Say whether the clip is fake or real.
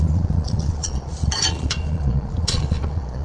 fake